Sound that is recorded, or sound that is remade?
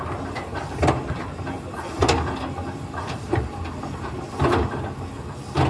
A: recorded